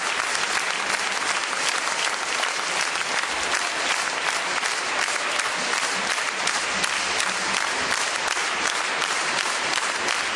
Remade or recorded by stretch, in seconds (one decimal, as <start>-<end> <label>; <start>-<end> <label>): 0.0-8.4 recorded; 8.4-10.0 remade; 10.0-10.4 recorded